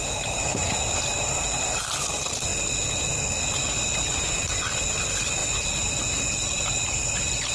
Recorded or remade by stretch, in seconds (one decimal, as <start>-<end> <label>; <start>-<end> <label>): 0.0-2.5 remade; 2.5-4.9 recorded; 4.9-5.4 remade; 5.4-6.4 recorded; 6.4-7.5 remade